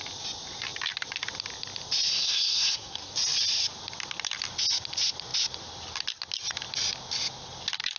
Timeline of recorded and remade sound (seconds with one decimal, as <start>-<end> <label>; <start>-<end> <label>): 0.0-2.1 recorded; 2.1-3.1 remade; 3.1-8.0 recorded